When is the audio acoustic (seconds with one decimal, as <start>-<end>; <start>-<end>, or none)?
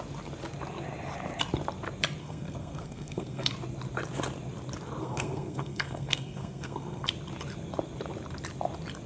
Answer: 0.0-2.2; 3.5-5.0; 7.1-9.1